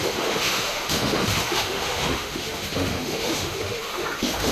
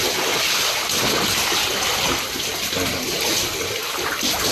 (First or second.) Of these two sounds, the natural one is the second